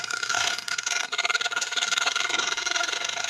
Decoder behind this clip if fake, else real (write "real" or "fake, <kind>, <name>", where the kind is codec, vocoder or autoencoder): fake, codec, SNAC